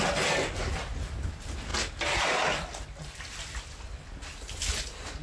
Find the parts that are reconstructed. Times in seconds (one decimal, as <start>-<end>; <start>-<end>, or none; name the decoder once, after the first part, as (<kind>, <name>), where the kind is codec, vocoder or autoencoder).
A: none